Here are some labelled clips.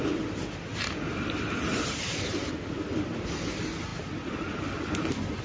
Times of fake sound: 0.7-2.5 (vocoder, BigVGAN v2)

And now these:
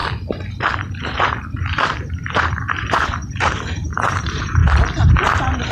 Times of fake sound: 1.0-4.6 (vocoder, BigVGAN v2); 5.1-5.7

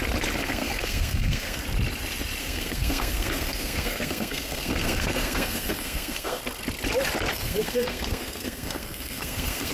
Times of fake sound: 0.4-1.6 (codec, SNAC); 2.4-6.4; 7.3-9.7

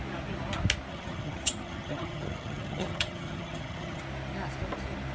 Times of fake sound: 0.9-4.0 (vocoder, HiFi-GAN)

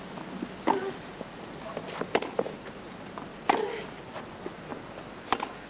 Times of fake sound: 1.1-1.6 (vocoder, Vocos)

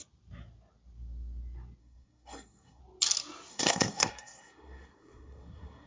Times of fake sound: 1.8-2.8 (codec, SNAC); 3.5-5.9